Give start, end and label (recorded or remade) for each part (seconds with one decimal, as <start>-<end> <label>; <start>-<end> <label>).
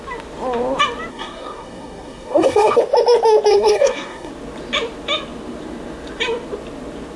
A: 0.0-1.1 recorded; 1.1-2.8 remade; 2.8-3.5 recorded; 3.5-4.3 remade; 4.3-7.2 recorded